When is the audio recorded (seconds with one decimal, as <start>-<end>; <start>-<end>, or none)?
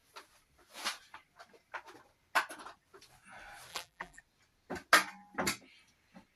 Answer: 0.0-3.7; 4.2-6.4